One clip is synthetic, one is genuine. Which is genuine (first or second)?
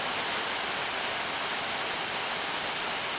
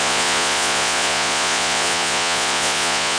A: first